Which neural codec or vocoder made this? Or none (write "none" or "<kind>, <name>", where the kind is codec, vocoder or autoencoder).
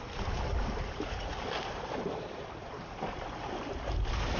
vocoder, BigVGAN v2